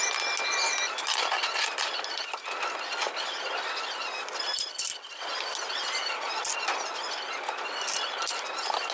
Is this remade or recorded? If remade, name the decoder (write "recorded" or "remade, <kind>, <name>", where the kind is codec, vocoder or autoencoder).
recorded